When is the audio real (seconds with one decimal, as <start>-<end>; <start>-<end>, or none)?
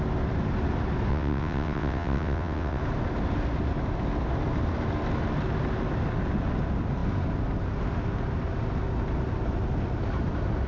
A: 0.0-1.1; 2.8-10.7